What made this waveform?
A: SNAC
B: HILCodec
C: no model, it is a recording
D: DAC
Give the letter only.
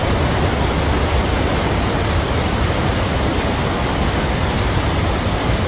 C